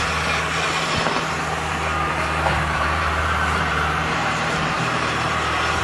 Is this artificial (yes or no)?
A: yes